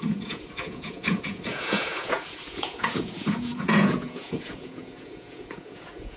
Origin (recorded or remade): remade